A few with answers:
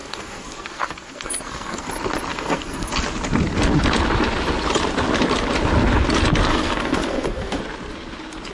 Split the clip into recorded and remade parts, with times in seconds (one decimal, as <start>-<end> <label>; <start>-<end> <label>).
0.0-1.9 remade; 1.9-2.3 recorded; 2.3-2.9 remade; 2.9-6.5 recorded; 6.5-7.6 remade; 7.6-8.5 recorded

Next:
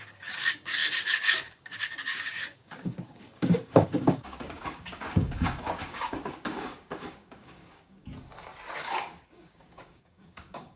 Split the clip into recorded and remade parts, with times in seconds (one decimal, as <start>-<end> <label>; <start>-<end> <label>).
0.0-8.1 remade; 8.1-8.8 recorded; 8.8-10.8 remade

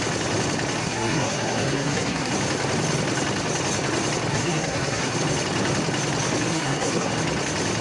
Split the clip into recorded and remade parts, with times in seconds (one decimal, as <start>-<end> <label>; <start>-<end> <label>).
0.0-0.8 recorded; 0.8-2.3 remade; 2.3-4.3 recorded; 4.3-5.2 remade; 5.2-6.5 recorded; 6.5-7.1 remade; 7.1-7.8 recorded

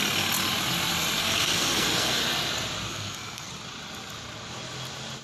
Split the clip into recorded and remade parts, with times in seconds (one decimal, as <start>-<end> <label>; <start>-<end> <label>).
0.0-1.2 recorded; 1.2-2.2 remade; 2.2-2.9 recorded; 2.9-3.5 remade; 3.5-5.2 recorded

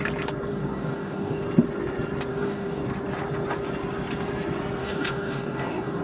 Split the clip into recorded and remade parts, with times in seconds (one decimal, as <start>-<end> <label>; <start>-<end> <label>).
0.0-0.5 recorded; 0.5-1.4 remade; 1.4-2.3 recorded; 2.3-2.8 remade; 2.8-4.8 recorded; 4.8-6.0 remade